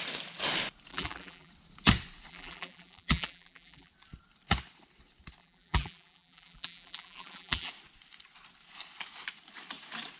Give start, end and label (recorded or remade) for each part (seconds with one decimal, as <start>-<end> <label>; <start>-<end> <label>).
0.0-0.9 recorded; 0.9-1.5 remade; 1.5-2.3 recorded; 2.3-3.9 remade; 3.9-5.4 recorded; 5.4-7.7 remade; 7.7-10.2 recorded